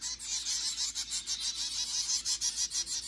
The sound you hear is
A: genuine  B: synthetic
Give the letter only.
A